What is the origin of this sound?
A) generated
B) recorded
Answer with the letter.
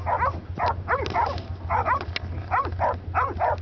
B